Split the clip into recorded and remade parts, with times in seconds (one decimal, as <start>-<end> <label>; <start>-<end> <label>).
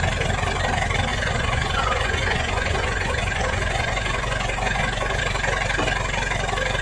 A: 0.0-1.1 recorded; 1.1-5.2 remade; 5.2-6.8 recorded